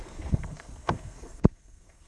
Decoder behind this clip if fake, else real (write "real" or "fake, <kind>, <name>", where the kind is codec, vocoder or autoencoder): fake, codec, SNAC